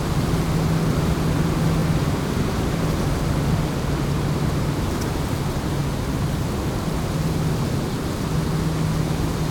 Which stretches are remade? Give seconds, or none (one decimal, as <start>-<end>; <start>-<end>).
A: none